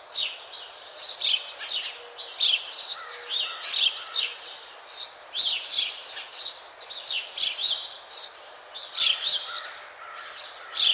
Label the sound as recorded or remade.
recorded